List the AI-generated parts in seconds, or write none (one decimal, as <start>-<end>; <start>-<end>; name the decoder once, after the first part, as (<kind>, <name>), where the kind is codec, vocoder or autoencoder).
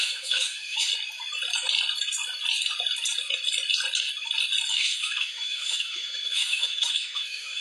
0.0-0.9 (autoencoder, DAC-VAE); 4.7-7.6